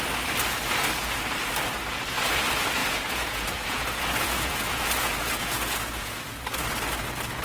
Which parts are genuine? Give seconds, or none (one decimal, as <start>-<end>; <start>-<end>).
0.0-2.8; 6.6-7.4